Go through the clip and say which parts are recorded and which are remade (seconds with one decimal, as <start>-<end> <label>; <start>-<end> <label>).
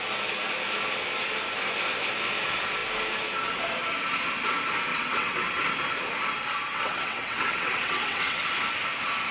0.0-4.9 recorded; 4.9-5.5 remade; 5.5-6.7 recorded; 6.7-8.4 remade; 8.4-9.3 recorded